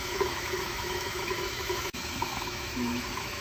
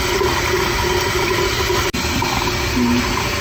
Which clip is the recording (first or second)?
second